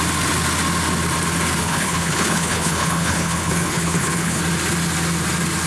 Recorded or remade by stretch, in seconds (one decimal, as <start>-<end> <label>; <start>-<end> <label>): 0.0-1.6 recorded; 1.6-4.4 remade; 4.4-5.7 recorded